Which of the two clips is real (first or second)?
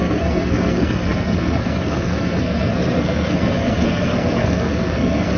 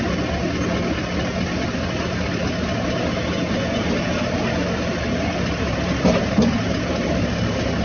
second